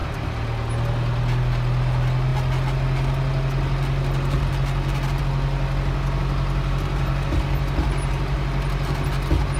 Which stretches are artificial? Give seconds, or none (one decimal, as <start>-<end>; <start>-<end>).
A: none